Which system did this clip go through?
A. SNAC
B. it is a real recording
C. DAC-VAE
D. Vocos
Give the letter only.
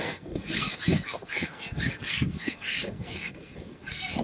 A